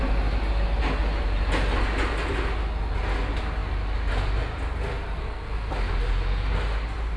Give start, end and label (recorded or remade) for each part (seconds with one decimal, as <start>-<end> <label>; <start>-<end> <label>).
0.0-5.2 recorded; 5.2-5.7 remade; 5.7-7.2 recorded